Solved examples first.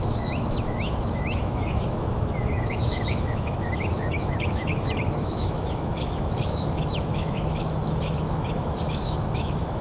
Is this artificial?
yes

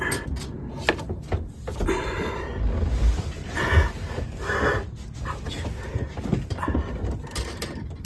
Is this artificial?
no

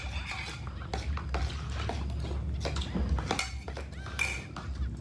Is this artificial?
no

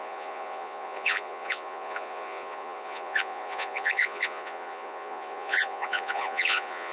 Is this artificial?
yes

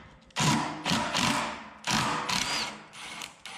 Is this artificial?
no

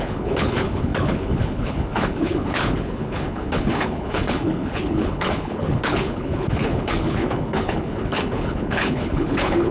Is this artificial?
yes